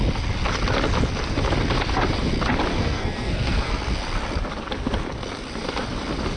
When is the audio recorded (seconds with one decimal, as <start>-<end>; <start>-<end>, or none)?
0.0-2.7; 3.8-6.4